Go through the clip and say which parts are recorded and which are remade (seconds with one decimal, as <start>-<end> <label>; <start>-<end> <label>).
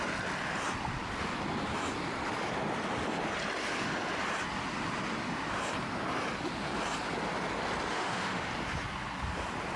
0.0-7.9 recorded; 7.9-8.5 remade; 8.5-9.8 recorded